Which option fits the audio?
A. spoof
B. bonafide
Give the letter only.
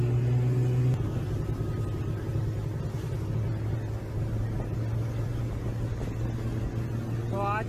B